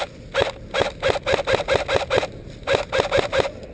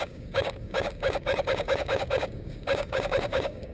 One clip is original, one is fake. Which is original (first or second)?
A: first